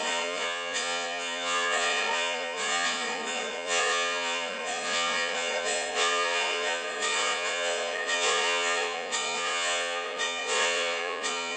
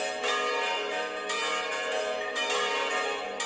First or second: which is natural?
second